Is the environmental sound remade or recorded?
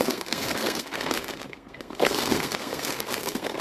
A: remade